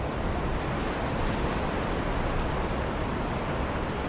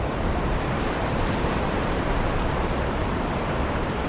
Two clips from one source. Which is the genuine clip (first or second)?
first